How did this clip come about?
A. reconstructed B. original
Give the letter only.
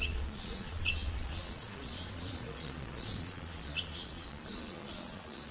A